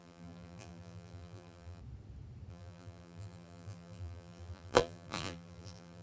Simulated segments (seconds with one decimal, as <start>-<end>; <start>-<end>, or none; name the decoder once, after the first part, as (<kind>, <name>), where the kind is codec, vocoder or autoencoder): 0.0-1.8 (vocoder, BigVGAN v2); 2.5-6.0